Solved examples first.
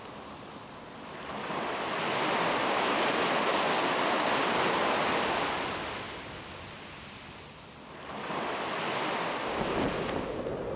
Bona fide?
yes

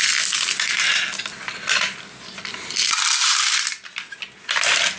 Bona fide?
yes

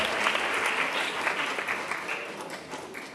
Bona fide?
yes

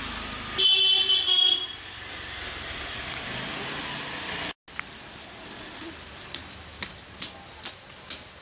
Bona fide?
yes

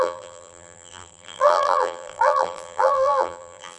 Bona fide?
no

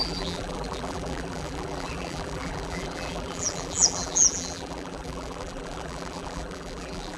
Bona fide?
no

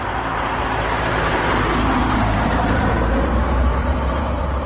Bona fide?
no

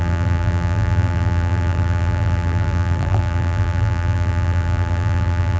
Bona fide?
no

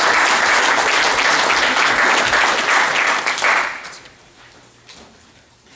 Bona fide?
yes